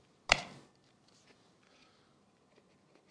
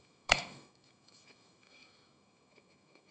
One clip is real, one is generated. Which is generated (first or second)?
second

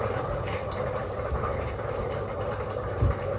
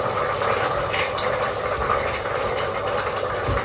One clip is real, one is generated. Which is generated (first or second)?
first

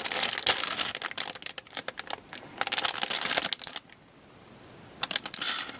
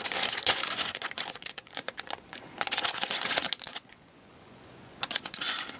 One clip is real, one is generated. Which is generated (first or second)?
second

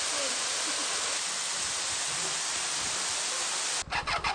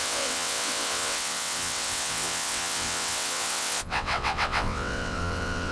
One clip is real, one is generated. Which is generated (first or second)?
second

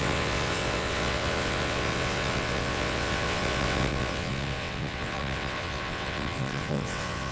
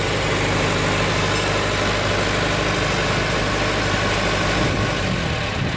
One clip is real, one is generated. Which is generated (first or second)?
first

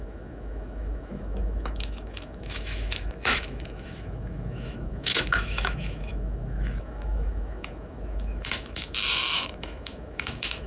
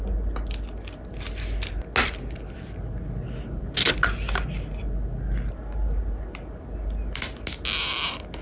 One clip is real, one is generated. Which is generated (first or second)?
first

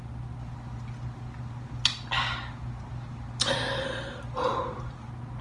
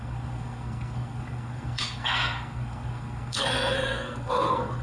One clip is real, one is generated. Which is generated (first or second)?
second